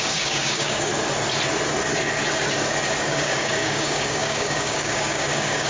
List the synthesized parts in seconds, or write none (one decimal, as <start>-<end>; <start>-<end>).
0.0-0.9; 3.0-5.7